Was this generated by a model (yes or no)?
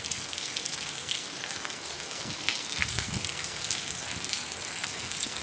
yes